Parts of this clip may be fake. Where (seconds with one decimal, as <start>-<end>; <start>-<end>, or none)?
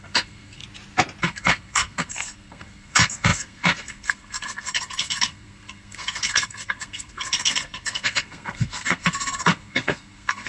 0.0-0.6; 1.2-10.5